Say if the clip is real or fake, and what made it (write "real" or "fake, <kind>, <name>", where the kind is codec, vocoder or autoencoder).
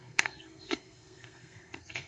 fake, codec, SNAC